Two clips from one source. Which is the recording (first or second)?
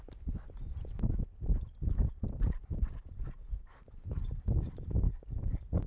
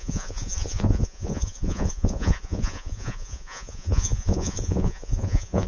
first